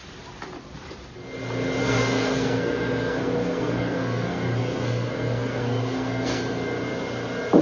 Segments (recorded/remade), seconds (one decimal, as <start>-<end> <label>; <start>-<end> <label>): 0.0-1.8 recorded; 1.8-6.4 remade; 6.4-7.6 recorded